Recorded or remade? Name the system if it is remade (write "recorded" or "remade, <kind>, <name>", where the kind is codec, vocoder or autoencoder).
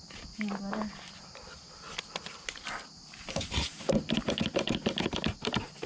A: recorded